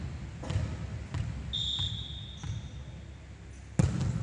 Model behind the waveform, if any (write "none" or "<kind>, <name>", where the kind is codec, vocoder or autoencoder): none